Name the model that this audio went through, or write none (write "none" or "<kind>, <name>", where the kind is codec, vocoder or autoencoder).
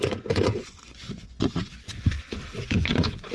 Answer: vocoder, Vocos